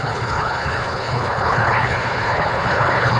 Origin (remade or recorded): remade